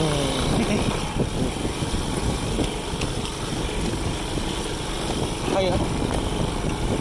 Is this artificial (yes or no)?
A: no